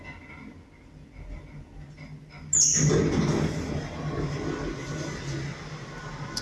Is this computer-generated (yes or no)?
no